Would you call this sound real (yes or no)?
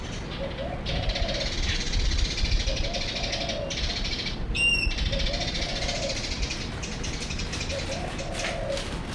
yes